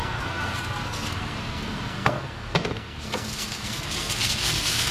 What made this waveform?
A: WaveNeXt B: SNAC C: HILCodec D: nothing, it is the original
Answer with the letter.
B